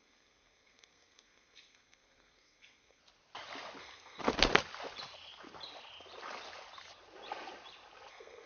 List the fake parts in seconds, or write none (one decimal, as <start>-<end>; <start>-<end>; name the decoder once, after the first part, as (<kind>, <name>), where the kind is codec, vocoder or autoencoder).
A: 0.0-3.0 (codec, SNAC); 3.8-4.2; 8.1-8.5